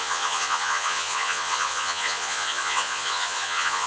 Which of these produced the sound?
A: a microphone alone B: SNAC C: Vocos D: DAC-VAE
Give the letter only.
C